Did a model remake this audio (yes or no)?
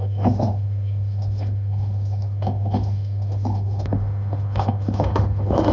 yes